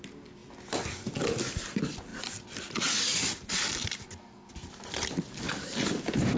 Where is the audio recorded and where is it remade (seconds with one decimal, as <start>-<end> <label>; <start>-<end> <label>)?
0.0-6.4 recorded